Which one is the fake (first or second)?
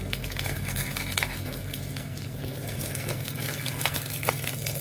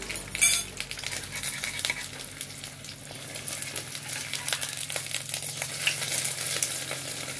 first